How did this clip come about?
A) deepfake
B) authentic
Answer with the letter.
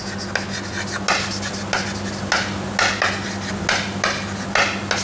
B